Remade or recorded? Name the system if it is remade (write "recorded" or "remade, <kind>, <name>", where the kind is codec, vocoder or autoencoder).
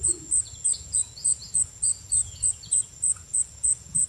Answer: remade, vocoder, Vocos